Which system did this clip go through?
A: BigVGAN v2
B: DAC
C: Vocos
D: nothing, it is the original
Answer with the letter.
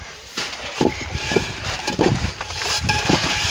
A